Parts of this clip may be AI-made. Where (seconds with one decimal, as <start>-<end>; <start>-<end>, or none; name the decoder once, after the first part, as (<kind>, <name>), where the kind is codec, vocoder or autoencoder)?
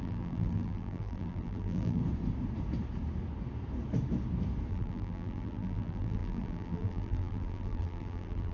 0.0-2.0 (vocoder, BigVGAN v2); 4.7-8.5